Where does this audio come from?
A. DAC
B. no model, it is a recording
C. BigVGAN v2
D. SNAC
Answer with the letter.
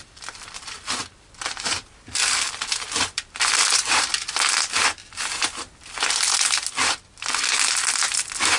C